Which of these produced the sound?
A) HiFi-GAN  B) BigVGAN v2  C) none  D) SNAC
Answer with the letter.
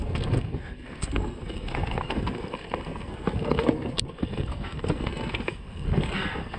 D